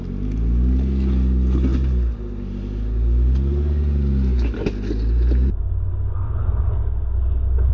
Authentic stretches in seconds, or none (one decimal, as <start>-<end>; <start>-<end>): 0.0-7.7